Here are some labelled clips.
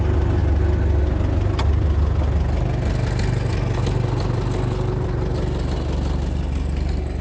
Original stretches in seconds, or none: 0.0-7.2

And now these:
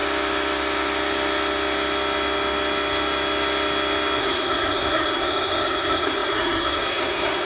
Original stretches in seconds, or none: 0.0-4.2

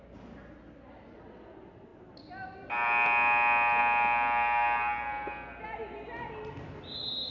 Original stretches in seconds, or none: 0.0-7.3